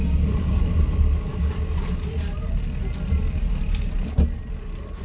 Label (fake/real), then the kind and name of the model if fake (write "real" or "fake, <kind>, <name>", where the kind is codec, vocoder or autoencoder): real